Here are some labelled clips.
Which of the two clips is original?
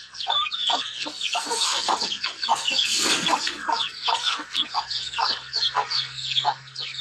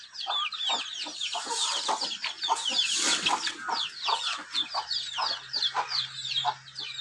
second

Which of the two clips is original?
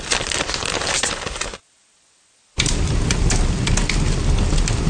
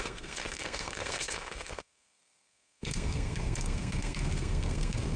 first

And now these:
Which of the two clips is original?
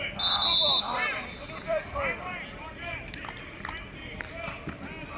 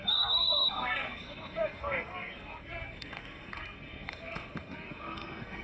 first